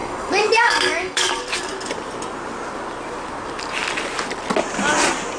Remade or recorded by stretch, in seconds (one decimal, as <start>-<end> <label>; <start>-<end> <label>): 0.0-1.4 remade; 1.4-5.4 recorded